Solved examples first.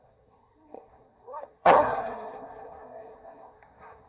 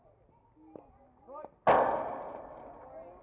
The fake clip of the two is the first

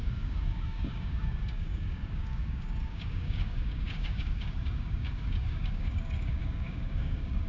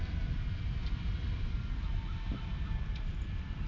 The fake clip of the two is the first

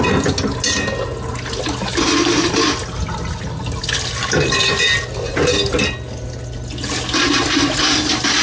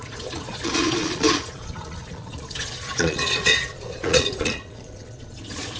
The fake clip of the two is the second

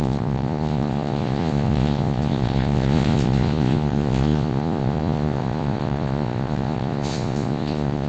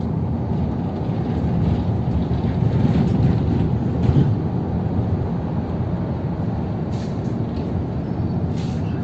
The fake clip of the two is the first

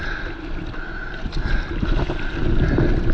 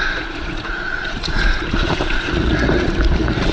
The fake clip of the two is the second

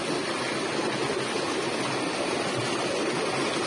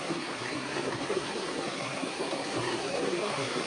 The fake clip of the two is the second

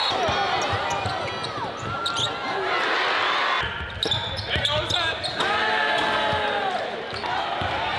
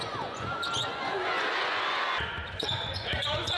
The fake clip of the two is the second